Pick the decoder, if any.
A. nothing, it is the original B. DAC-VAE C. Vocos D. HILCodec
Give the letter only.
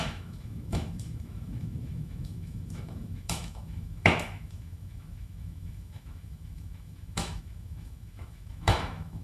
B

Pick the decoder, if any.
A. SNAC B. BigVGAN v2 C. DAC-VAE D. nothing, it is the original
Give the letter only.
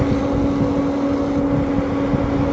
D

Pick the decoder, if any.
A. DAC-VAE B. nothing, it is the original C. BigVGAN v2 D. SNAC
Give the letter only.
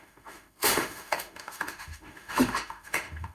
A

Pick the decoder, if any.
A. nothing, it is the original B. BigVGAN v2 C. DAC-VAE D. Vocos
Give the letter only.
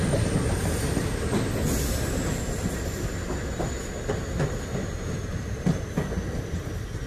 A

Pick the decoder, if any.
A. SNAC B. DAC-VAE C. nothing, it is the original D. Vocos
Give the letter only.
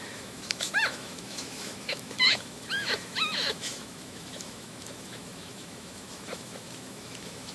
B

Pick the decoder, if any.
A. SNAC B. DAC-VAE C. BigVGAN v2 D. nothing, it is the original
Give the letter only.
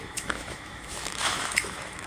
B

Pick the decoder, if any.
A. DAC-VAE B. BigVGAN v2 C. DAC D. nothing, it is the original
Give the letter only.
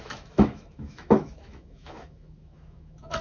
A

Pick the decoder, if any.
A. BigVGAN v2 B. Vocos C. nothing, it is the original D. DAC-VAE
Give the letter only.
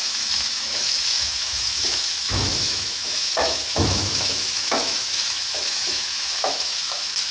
D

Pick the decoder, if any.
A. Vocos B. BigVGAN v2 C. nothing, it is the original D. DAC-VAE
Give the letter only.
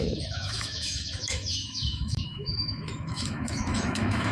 D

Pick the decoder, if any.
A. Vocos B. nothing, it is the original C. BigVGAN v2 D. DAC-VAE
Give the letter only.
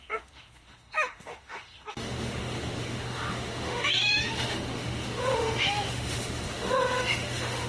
D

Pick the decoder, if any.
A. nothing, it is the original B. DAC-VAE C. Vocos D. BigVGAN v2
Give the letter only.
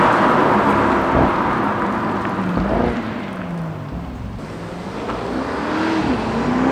A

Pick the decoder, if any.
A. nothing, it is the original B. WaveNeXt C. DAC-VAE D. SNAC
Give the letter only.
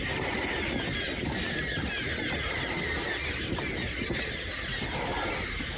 A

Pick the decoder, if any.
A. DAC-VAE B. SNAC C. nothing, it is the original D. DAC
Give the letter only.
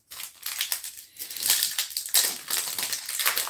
C